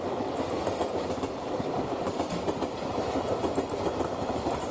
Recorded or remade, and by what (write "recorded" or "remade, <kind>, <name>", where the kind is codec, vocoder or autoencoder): recorded